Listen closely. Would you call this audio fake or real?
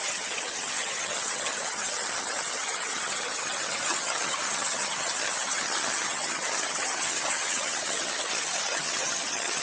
fake